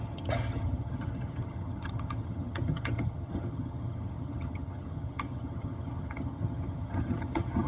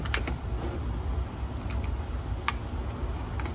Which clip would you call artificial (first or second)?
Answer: first